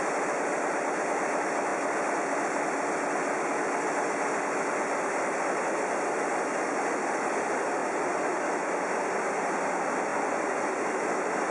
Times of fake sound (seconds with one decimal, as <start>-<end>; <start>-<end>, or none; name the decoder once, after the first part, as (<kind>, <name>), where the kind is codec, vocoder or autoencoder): 10.1-10.6 (vocoder, Vocos)